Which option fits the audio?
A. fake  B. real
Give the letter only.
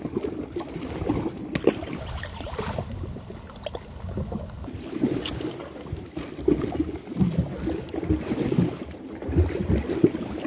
B